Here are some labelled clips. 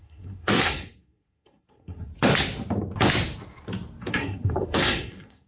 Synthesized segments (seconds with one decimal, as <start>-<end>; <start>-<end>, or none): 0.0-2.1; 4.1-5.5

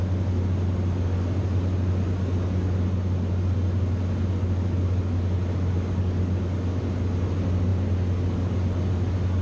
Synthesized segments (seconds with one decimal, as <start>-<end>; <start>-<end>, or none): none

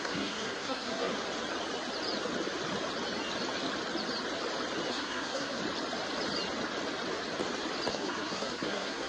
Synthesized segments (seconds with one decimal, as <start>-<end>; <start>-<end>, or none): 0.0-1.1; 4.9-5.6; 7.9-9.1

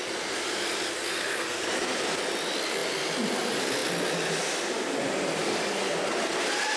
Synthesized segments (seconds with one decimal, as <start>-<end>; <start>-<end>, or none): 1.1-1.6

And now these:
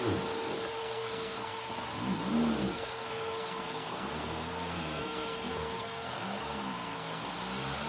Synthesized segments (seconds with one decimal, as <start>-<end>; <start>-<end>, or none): 0.8-1.6; 2.6-7.3